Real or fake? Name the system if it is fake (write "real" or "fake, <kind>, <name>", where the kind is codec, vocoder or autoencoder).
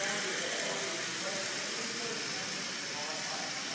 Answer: real